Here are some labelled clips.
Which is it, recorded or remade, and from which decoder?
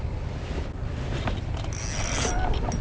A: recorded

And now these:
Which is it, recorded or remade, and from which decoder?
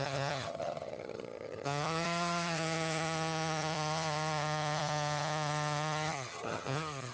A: remade, vocoder, HiFi-GAN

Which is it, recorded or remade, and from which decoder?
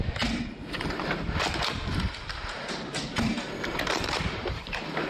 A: remade, vocoder, BigVGAN v2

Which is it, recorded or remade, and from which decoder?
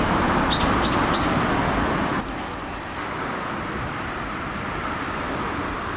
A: recorded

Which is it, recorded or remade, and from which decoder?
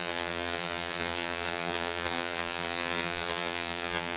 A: remade, vocoder, BigVGAN v2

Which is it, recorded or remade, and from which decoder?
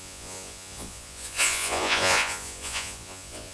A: remade, vocoder, Vocos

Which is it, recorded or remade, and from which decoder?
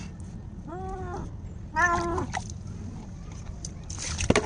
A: recorded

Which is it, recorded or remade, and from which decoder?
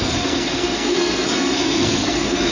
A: remade, codec, SNAC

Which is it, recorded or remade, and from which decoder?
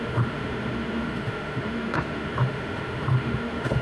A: remade, autoencoder, DAC-VAE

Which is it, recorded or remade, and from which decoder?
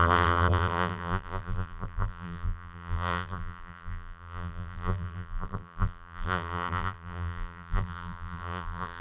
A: remade, vocoder, BigVGAN v2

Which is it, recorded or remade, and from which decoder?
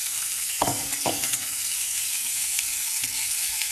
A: remade, codec, SNAC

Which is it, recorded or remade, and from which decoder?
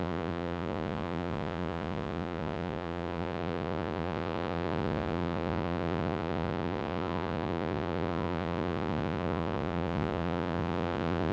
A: remade, vocoder, Vocos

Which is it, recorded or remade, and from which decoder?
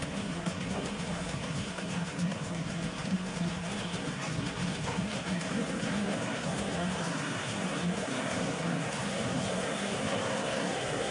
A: remade, codec, SNAC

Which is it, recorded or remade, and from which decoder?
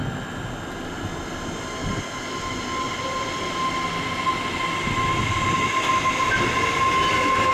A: recorded